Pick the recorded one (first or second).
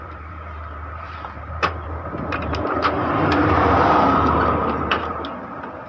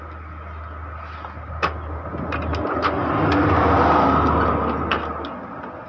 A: second